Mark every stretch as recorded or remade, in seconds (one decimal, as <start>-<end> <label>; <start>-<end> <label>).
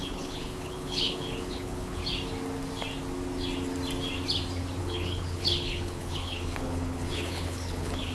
0.0-2.0 remade; 2.0-4.8 recorded; 4.8-8.1 remade